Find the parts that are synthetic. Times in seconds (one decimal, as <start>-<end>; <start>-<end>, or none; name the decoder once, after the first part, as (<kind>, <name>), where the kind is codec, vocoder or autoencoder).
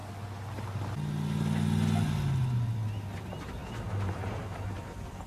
none